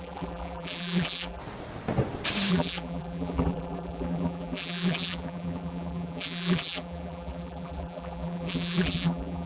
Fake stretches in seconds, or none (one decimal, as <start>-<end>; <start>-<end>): 0.0-1.4; 2.5-9.5